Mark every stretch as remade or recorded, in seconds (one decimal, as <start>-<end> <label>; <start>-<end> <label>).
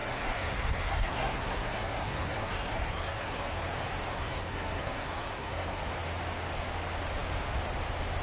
0.0-3.6 remade; 3.6-4.1 recorded; 4.1-5.8 remade; 5.8-8.2 recorded